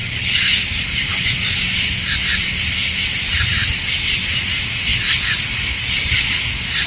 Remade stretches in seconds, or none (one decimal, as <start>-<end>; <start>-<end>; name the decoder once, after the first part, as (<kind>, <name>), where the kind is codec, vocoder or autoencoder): none